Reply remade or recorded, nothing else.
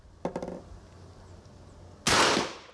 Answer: recorded